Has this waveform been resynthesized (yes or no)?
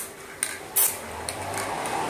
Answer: no